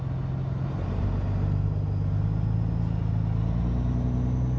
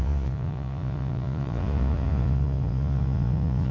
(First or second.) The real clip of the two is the first